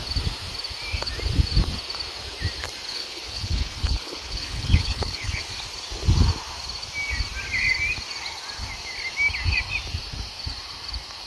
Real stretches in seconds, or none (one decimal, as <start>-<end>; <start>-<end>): 0.0-2.9; 5.4-11.3